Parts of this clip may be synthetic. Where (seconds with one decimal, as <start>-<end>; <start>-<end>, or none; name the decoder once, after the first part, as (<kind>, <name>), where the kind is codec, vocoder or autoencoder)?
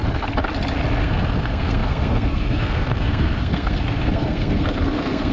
1.0-5.3 (codec, SNAC)